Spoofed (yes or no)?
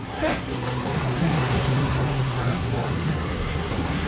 yes